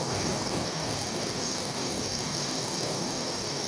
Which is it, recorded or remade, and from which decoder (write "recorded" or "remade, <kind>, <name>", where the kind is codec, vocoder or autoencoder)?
remade, codec, DAC